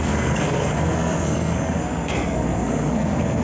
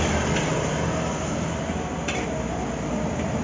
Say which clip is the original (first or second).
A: second